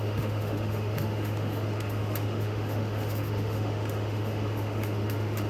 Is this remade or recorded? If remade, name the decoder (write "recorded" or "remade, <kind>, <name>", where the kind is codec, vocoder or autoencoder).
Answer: remade, autoencoder, DAC-VAE